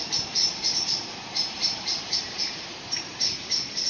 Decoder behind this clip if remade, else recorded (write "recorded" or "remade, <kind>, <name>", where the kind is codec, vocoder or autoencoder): remade, vocoder, BigVGAN v2